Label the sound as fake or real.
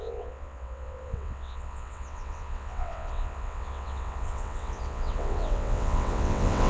fake